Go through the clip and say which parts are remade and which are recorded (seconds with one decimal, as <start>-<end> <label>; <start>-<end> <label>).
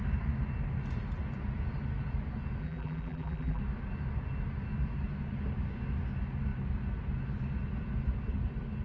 0.0-2.6 recorded; 2.6-3.6 remade; 3.6-8.8 recorded